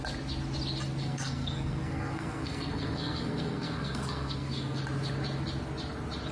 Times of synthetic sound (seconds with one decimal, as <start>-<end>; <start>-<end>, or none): 1.0-4.8